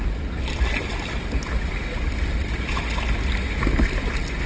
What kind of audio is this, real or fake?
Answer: real